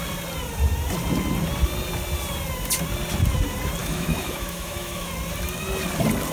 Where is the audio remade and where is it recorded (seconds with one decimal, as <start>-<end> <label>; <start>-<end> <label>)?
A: 0.0-3.8 recorded; 3.8-5.1 remade; 5.1-6.3 recorded